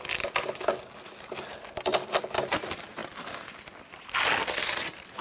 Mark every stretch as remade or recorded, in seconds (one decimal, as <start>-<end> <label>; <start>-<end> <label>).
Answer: 0.0-5.2 recorded